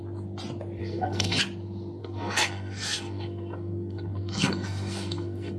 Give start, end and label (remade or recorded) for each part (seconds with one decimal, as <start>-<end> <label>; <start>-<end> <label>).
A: 0.0-0.8 recorded; 0.8-1.4 remade; 1.4-2.0 recorded; 2.0-5.6 remade